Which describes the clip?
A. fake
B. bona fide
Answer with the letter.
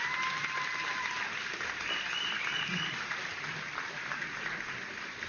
B